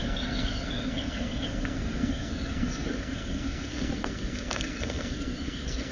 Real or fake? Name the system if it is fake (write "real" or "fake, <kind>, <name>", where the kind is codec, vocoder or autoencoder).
fake, codec, SNAC